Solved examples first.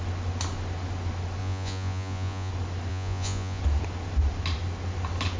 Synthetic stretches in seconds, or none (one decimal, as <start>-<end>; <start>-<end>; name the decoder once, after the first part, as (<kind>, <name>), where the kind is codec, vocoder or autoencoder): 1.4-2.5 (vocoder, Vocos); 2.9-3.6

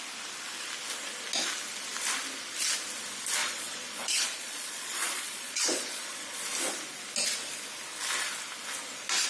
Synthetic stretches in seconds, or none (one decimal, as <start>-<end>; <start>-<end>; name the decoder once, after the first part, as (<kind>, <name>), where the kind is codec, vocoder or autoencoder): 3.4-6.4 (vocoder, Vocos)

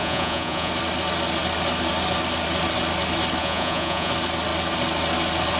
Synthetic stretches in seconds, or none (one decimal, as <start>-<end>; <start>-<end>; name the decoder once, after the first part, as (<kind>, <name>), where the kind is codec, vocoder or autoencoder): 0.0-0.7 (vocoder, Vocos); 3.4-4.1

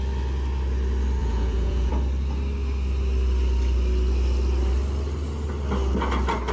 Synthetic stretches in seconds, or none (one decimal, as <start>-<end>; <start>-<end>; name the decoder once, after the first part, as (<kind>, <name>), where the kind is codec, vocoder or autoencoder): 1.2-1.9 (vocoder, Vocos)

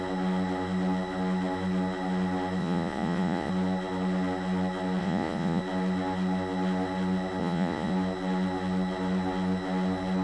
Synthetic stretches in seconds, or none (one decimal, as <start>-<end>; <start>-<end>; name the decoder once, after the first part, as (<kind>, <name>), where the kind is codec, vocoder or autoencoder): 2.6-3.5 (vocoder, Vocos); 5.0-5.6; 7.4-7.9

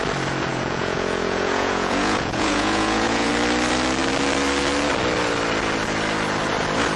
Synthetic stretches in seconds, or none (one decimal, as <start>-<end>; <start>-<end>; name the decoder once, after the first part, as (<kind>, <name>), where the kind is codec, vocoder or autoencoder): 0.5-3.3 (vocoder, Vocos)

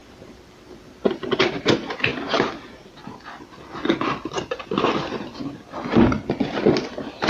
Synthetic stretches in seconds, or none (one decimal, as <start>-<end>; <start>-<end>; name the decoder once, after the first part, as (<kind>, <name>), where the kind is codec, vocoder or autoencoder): none